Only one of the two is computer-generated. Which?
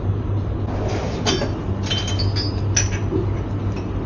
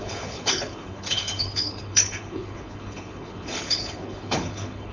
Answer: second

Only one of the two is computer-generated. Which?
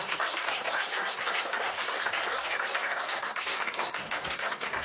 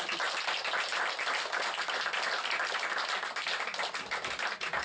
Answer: first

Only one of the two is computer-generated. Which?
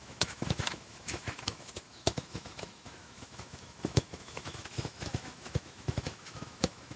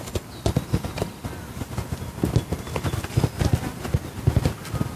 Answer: first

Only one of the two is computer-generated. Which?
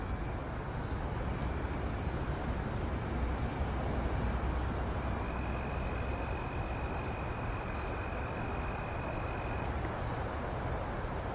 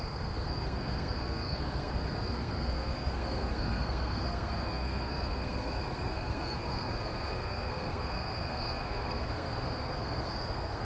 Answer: second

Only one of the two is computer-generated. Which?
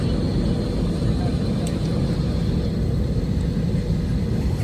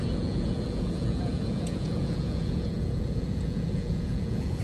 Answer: second